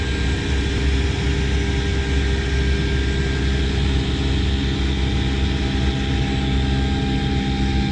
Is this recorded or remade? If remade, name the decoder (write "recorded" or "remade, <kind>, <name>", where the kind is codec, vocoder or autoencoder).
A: recorded